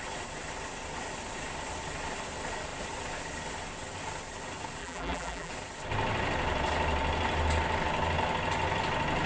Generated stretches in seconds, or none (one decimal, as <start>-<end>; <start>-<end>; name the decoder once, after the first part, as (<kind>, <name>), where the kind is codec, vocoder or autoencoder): 4.8-5.5 (vocoder, BigVGAN v2)